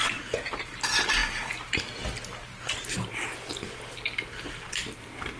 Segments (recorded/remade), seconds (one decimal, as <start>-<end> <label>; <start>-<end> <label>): 0.0-0.7 remade; 0.7-5.4 recorded